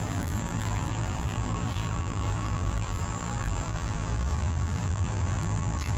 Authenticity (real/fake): fake